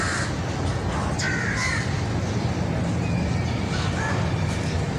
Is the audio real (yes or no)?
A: yes